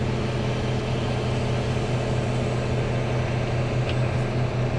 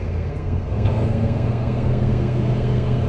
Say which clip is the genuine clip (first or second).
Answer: first